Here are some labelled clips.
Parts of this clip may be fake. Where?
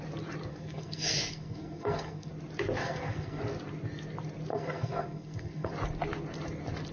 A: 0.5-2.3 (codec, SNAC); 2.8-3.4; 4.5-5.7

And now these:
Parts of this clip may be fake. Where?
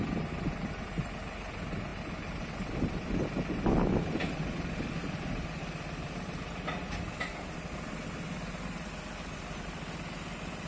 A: none